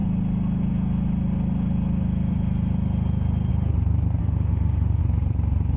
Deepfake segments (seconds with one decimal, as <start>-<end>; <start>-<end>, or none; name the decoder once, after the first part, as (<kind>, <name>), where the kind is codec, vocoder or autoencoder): 4.2-5.0 (autoencoder, DAC-VAE)